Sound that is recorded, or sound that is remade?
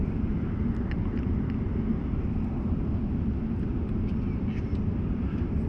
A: recorded